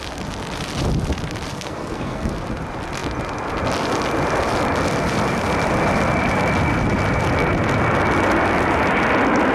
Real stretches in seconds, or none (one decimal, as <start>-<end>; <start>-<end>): 0.0-1.5; 2.3-9.5